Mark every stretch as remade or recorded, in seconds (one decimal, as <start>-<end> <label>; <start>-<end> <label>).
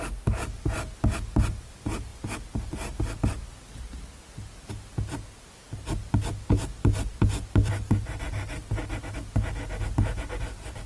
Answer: 0.0-10.9 recorded